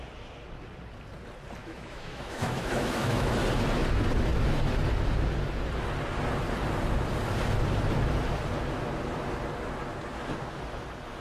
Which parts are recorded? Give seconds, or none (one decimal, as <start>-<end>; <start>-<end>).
0.0-1.6; 3.3-11.2